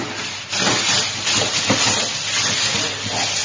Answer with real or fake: real